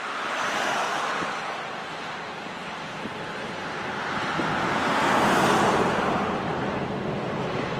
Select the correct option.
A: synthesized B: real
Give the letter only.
B